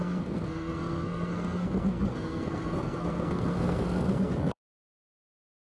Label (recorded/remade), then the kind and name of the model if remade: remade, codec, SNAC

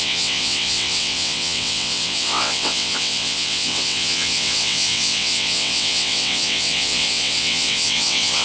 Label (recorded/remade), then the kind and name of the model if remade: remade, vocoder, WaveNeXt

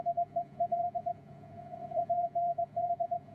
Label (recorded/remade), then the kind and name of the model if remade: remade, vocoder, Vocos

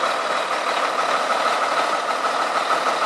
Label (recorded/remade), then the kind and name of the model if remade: recorded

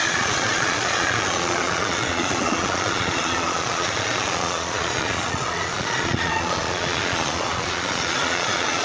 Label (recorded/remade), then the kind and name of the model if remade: remade, vocoder, Vocos